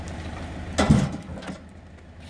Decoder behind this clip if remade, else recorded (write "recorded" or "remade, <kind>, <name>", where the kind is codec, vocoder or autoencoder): recorded